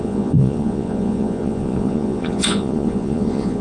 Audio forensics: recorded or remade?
remade